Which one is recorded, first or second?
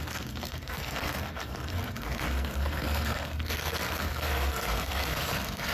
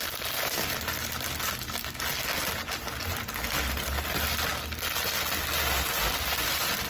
second